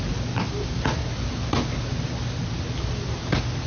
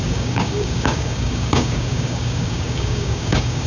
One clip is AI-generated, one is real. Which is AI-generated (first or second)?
second